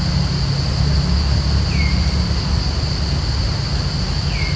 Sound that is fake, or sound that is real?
real